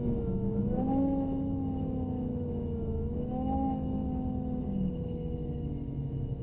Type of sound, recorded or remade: remade